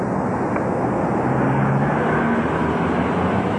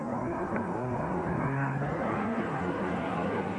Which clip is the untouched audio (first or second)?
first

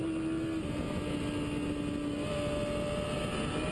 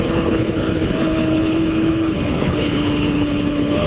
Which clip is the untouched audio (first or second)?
first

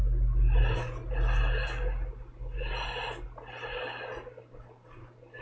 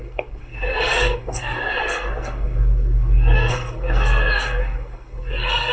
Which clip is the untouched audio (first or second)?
first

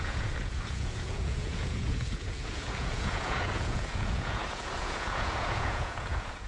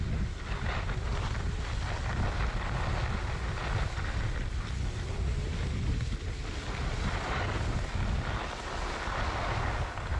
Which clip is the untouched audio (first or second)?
second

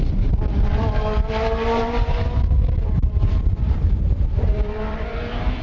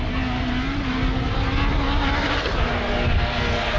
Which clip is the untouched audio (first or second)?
second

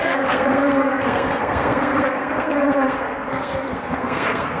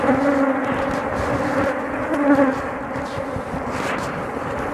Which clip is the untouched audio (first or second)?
second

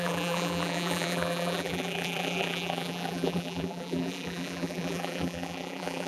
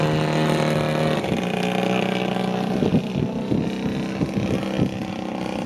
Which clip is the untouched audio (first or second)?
second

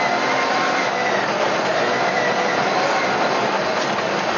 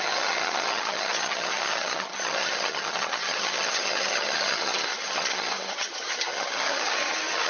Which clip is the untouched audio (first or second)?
first